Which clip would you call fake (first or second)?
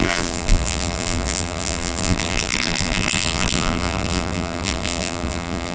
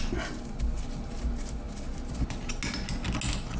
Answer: first